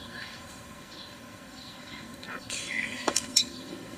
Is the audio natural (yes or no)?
no